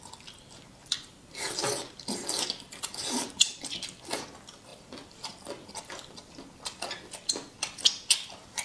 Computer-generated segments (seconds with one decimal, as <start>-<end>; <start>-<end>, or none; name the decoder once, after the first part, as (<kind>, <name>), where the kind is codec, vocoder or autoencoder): 0.8-1.6 (vocoder, BigVGAN v2); 4.7-6.4